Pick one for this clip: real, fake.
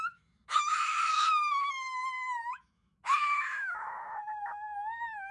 fake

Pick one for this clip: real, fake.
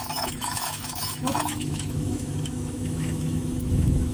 fake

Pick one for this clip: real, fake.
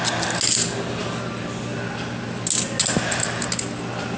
real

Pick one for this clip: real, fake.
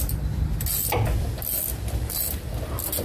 real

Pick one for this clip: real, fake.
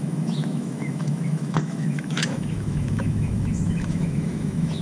fake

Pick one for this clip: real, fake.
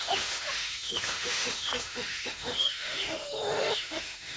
fake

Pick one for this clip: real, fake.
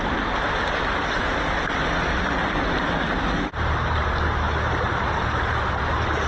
real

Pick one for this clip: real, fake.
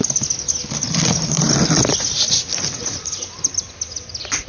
real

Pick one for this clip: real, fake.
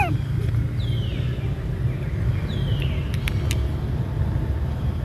real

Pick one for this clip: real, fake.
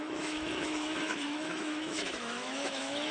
fake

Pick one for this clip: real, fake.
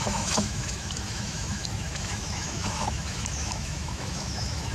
fake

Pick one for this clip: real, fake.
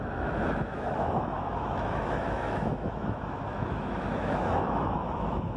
fake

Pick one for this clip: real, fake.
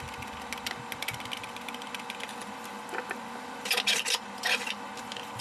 real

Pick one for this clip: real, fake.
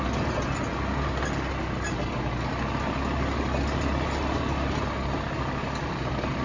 real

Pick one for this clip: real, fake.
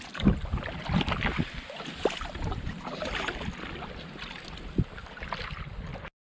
real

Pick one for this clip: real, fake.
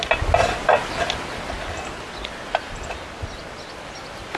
real